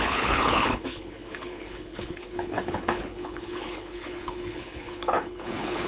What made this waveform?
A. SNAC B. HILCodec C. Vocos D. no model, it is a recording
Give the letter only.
B